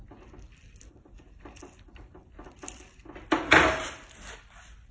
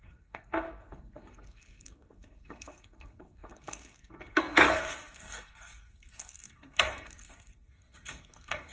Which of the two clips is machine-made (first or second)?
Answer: second